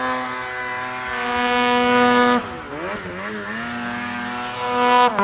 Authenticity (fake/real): real